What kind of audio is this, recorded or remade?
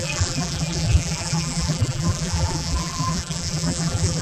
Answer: remade